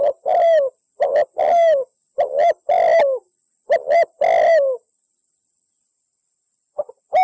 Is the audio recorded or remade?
recorded